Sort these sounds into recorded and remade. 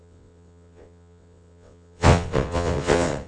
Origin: remade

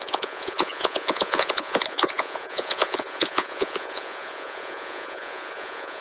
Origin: remade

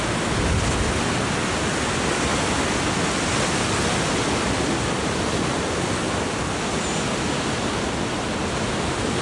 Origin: recorded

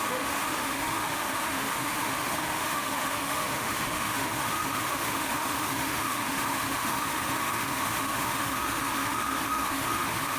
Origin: remade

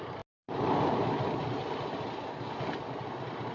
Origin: recorded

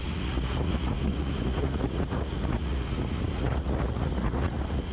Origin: remade